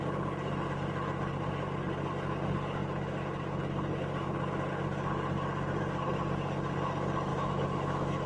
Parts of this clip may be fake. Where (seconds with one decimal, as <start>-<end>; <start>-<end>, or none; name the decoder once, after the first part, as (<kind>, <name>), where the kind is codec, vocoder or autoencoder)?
7.3-8.3 (autoencoder, DAC-VAE)